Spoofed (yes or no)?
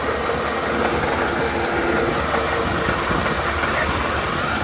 no